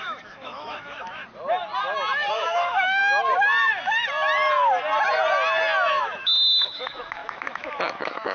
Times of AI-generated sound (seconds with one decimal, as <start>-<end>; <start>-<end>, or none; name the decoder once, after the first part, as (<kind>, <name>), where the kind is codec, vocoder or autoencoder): 0.0-1.2 (autoencoder, DAC-VAE); 2.3-3.0; 6.0-8.3